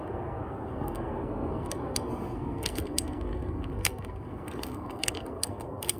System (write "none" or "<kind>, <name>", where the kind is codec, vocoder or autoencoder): codec, SNAC